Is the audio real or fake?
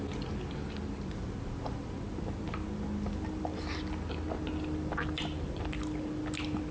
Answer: real